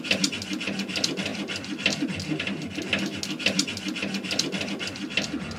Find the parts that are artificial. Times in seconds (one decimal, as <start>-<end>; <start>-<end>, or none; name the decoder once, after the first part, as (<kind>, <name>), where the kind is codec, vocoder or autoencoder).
none